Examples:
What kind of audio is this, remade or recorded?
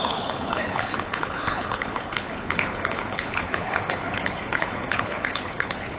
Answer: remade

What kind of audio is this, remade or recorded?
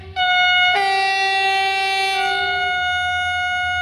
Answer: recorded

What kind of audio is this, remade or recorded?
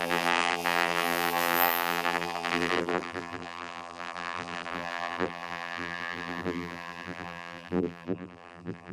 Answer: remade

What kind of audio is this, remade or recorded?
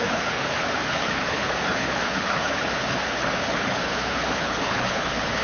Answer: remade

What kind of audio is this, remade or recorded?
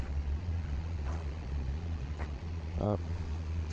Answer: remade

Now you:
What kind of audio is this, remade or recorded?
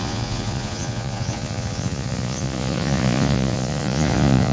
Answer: remade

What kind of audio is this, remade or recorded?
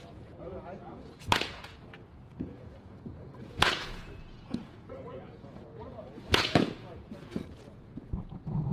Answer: remade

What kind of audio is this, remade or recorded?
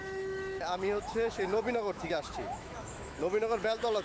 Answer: remade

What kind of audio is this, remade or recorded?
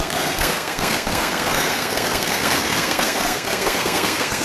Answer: remade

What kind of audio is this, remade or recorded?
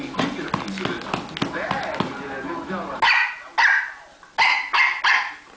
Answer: recorded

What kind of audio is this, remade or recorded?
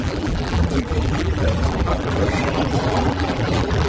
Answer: remade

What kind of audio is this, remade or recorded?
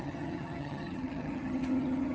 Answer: remade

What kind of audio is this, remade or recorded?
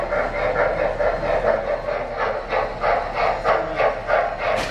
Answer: recorded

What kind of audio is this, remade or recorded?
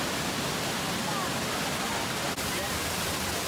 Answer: recorded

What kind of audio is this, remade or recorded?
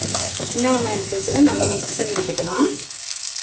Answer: remade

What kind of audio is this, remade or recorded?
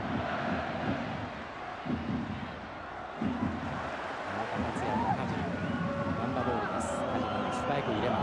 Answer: recorded